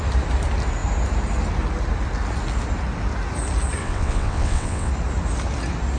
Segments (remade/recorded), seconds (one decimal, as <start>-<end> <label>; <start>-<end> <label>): 0.0-3.8 recorded; 3.8-4.9 remade; 4.9-6.0 recorded